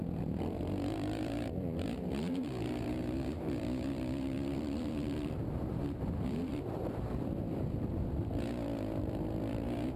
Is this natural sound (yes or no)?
no